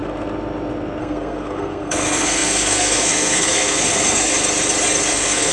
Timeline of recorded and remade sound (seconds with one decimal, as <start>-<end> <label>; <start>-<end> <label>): 0.0-1.0 recorded; 1.0-4.3 remade; 4.3-5.1 recorded; 5.1-5.5 remade